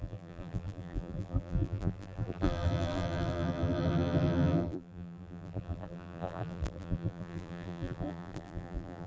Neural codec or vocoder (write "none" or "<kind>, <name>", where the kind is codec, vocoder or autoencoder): vocoder, BigVGAN v2